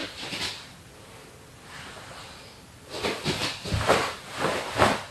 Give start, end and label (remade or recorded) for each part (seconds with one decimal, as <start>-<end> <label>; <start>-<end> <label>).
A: 0.0-5.1 recorded